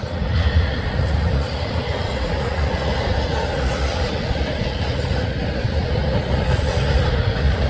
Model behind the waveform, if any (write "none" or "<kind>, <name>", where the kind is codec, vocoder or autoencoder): vocoder, Vocos